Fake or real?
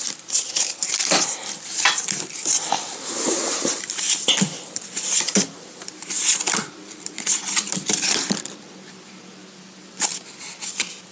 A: fake